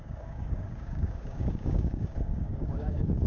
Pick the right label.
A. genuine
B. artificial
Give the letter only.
B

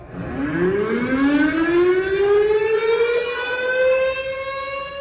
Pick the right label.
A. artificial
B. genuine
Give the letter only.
B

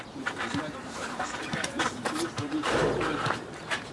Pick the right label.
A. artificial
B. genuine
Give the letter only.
A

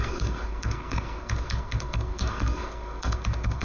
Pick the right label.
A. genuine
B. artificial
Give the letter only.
B